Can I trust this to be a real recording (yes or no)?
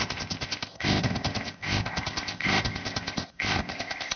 no